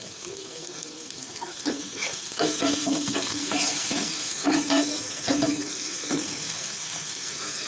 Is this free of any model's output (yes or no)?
no